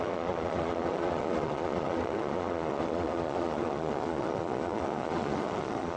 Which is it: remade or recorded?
remade